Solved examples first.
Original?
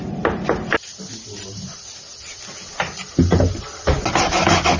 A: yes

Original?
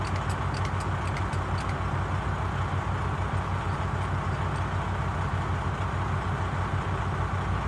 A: yes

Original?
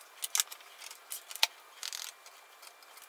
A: yes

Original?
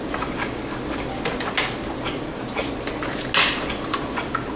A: yes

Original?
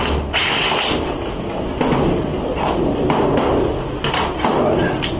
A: yes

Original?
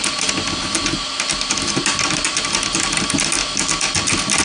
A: yes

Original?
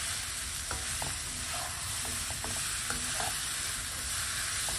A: yes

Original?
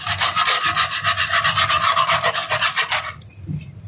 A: yes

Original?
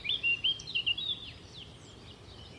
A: no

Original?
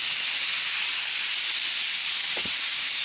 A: yes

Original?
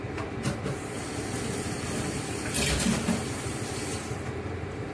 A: no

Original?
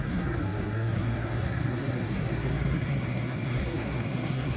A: no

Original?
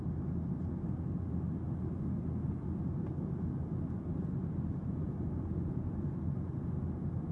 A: yes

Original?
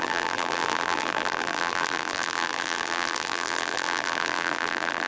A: no